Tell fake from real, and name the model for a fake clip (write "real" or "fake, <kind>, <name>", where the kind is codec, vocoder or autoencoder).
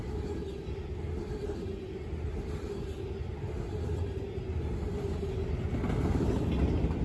real